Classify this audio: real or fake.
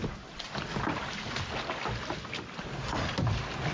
real